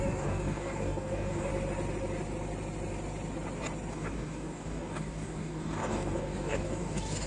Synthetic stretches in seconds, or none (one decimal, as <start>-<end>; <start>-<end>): 0.0-1.5; 3.9-7.3